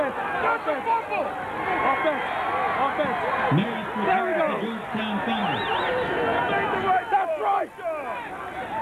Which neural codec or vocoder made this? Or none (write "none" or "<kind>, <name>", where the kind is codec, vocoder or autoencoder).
none